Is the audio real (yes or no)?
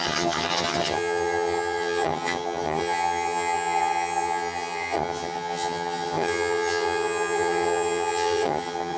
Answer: no